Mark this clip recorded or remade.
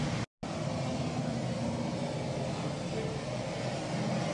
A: recorded